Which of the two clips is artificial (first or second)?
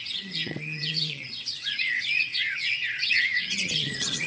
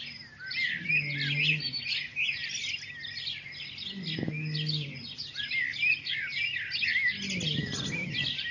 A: first